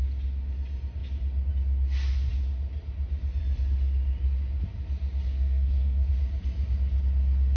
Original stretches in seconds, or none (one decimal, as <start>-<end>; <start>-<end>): 0.0-5.3; 6.1-7.6